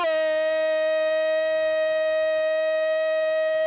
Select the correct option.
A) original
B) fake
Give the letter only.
A